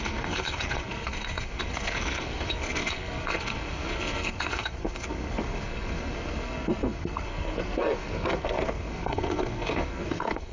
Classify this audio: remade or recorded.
remade